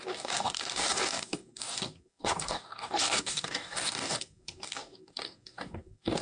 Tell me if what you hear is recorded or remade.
remade